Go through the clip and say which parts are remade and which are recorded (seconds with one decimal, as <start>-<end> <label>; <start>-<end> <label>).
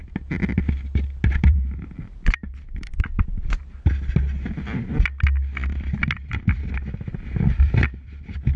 0.0-1.3 recorded; 1.3-3.3 remade; 3.3-6.0 recorded; 6.0-6.6 remade; 6.6-7.5 recorded; 7.5-8.6 remade